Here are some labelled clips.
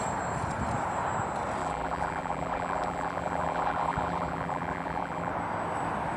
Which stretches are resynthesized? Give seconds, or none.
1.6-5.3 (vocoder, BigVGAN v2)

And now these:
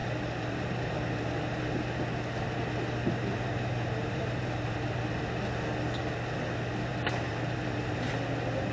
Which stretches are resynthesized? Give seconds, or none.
0.0-1.6 (vocoder, BigVGAN v2); 3.3-5.2; 6.9-8.1

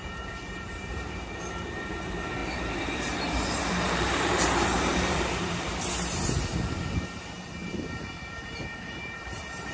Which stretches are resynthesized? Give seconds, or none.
0.0-9.7 (vocoder, BigVGAN v2)